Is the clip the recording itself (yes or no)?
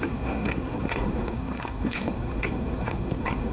no